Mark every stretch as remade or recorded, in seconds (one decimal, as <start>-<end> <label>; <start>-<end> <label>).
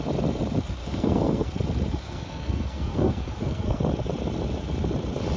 0.0-0.8 recorded; 0.8-1.5 remade; 1.5-1.9 recorded; 1.9-3.8 remade; 3.8-5.4 recorded